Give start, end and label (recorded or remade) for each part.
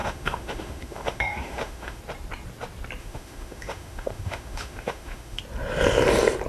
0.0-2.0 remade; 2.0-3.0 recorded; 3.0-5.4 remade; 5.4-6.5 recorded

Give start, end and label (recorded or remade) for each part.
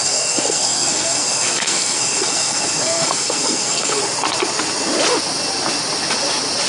0.0-4.0 remade; 4.0-6.7 recorded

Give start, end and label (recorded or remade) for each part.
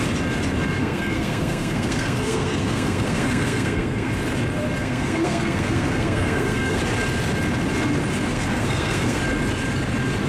0.0-0.8 recorded; 0.8-4.1 remade; 4.1-4.8 recorded; 4.8-6.8 remade; 6.8-8.3 recorded; 8.3-9.2 remade; 9.2-10.3 recorded